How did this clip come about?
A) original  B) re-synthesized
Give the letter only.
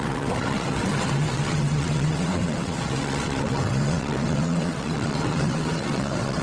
B